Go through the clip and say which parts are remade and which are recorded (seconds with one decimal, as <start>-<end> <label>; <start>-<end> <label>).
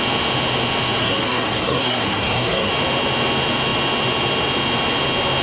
0.0-1.0 recorded; 1.0-2.7 remade; 2.7-5.4 recorded